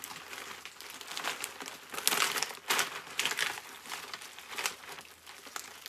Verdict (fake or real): real